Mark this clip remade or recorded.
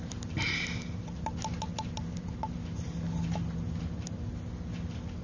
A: recorded